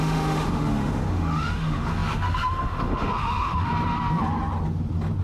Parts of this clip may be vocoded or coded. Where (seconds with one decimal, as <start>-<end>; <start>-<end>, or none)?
0.0-3.7